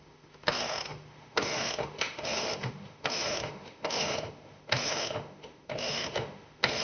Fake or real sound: fake